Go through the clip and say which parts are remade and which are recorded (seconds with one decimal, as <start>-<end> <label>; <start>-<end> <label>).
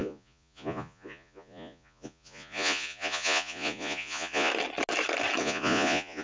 0.0-4.5 remade; 4.5-5.4 recorded; 5.4-6.2 remade